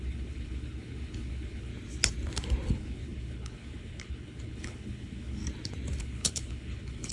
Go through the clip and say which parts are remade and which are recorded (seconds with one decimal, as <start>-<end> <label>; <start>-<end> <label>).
0.0-1.7 remade; 1.7-2.7 recorded; 2.7-5.4 remade; 5.4-6.0 recorded; 6.0-7.1 remade